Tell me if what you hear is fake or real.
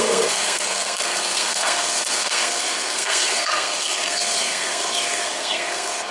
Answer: fake